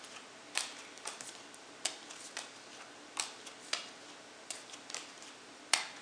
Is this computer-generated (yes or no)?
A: no